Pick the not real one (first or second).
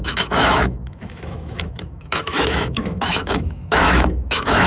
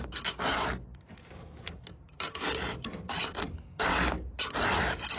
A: first